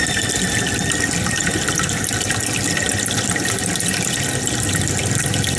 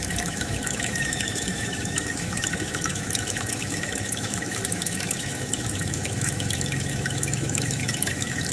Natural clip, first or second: first